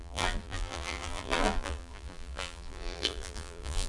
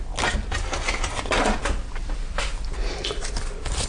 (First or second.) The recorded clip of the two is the second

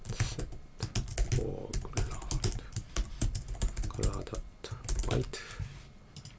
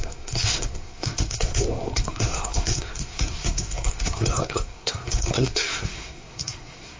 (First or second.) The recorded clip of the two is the first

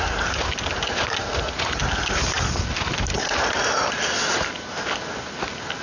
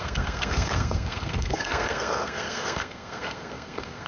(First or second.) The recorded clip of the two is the first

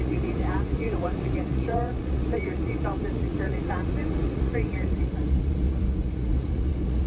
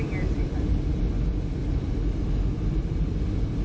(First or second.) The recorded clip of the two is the second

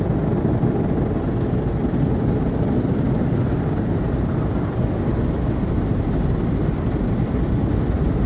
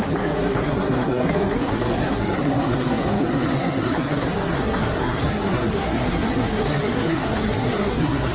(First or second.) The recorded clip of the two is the first